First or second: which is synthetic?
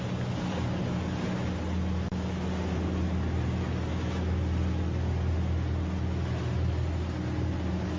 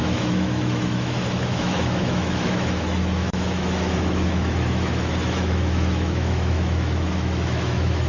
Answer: second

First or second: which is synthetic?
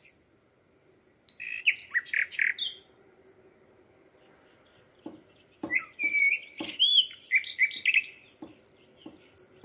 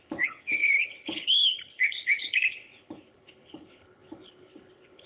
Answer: second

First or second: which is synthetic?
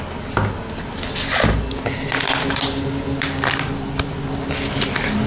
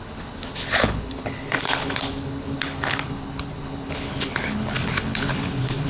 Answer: second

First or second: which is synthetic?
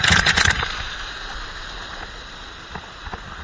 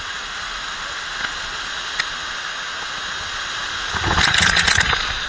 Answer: first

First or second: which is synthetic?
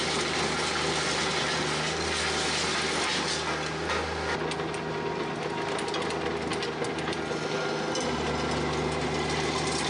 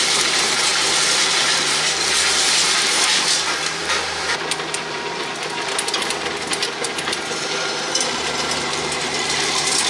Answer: second